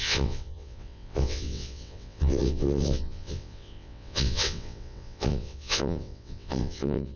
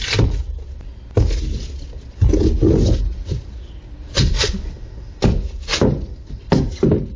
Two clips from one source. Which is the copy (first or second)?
first